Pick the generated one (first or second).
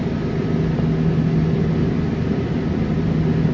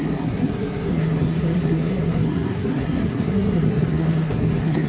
second